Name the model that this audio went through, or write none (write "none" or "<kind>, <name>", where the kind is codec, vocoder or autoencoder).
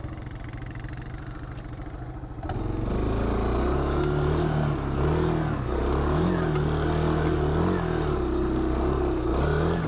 none